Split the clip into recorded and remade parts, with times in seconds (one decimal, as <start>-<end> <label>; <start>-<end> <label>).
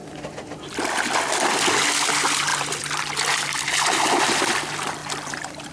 0.0-1.0 remade; 1.0-2.5 recorded; 2.5-3.1 remade; 3.1-5.0 recorded; 5.0-5.7 remade